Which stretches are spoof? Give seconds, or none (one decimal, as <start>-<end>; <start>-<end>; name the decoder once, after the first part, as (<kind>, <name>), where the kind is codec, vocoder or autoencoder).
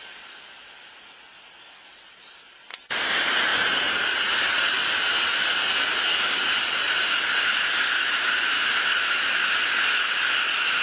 none